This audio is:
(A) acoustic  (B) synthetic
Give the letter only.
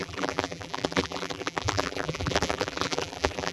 B